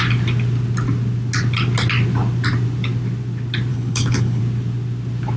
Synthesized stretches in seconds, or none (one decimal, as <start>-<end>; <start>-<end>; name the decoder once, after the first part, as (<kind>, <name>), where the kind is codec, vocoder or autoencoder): 3.7-4.4 (codec, HILCodec)